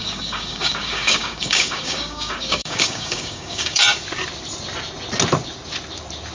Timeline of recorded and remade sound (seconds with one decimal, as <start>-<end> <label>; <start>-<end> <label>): 0.0-3.8 remade; 3.8-6.3 recorded